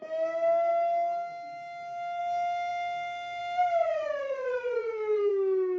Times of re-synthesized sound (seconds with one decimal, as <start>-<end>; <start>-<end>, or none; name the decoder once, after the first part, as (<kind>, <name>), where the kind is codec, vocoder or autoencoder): 3.8-5.3 (vocoder, Vocos)